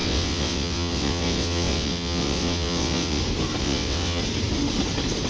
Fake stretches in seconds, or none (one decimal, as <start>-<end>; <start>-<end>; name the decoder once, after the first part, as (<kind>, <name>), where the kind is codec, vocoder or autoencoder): 0.0-3.2 (vocoder, WaveNeXt); 3.6-4.2

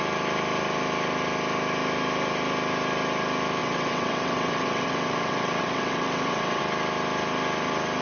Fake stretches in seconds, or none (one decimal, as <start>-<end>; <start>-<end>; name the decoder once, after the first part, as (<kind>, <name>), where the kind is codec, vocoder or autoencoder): 3.6-6.6 (vocoder, WaveNeXt)

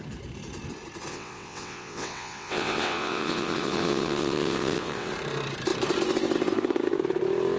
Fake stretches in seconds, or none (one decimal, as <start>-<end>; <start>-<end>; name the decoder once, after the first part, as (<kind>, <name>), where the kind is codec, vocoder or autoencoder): 1.1-5.1 (vocoder, WaveNeXt)

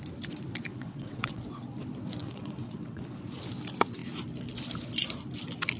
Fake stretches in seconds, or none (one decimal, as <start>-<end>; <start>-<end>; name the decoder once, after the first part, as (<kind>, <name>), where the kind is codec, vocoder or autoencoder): 0.7-1.4 (vocoder, WaveNeXt); 2.2-3.0

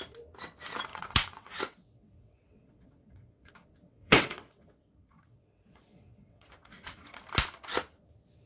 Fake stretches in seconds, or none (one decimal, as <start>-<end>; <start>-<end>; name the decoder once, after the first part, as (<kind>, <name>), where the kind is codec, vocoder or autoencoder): 0.9-3.5 (vocoder, WaveNeXt); 3.9-7.2

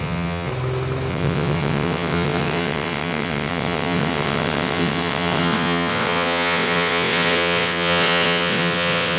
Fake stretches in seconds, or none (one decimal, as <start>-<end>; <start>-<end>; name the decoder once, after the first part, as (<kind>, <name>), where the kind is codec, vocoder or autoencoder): 0.0-0.5 (vocoder, WaveNeXt); 1.1-9.2

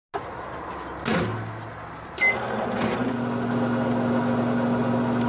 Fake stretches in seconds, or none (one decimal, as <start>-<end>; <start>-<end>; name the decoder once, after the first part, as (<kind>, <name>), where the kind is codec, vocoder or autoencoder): none

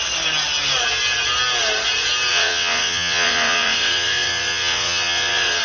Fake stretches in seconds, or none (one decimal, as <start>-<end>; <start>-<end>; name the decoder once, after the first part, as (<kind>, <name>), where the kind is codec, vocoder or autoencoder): 2.3-5.6 (vocoder, WaveNeXt)